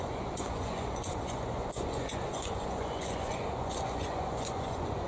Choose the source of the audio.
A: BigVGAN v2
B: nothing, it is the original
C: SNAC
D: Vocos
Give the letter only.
D